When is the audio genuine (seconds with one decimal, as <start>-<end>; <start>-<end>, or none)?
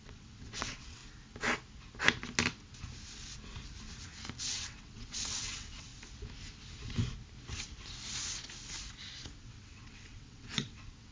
1.0-4.4; 5.9-9.4